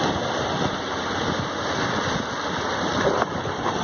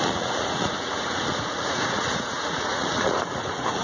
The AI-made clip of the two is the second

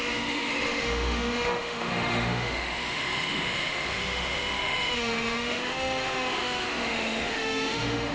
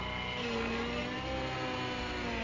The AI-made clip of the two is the first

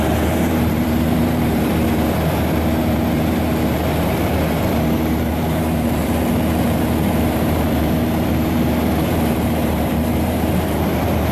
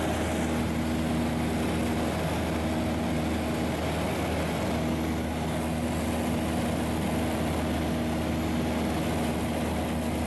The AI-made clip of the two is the first